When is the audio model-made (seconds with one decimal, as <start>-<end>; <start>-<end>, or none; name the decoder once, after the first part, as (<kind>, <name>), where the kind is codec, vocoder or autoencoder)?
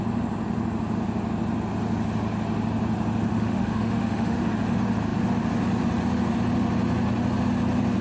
3.3-4.4 (autoencoder, DAC-VAE)